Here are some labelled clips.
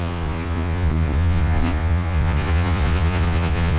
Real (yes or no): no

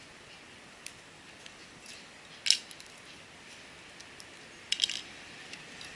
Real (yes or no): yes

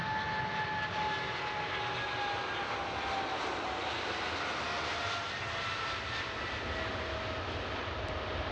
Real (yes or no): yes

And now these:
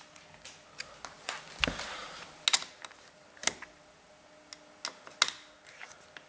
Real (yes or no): yes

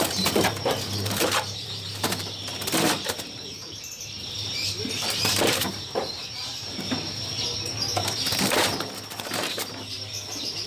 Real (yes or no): no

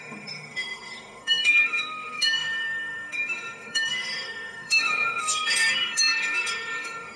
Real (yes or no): no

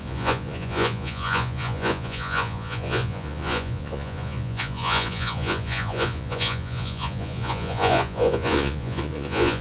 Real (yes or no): no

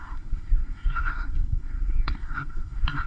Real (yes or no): no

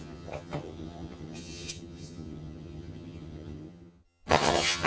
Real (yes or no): no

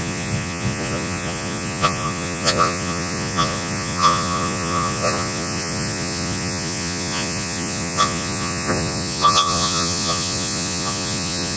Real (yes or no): no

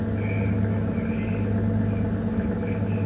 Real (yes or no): yes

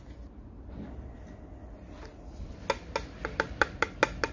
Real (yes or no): yes